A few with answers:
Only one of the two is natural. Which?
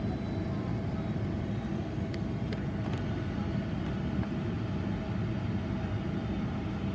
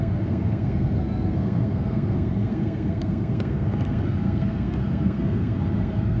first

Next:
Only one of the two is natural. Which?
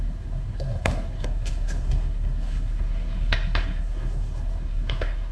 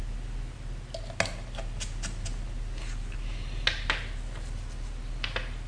second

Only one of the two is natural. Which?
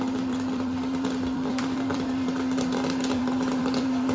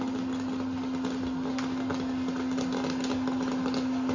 second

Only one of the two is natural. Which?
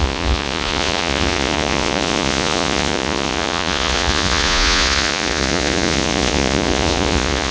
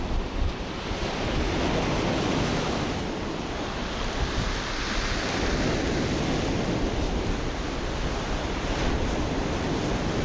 second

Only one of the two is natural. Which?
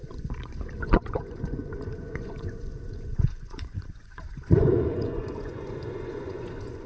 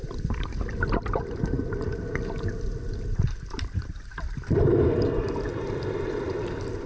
second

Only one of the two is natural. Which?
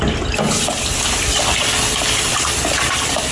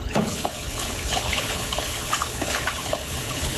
first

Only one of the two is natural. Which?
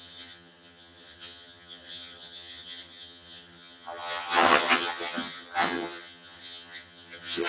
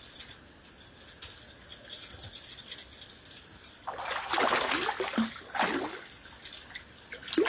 second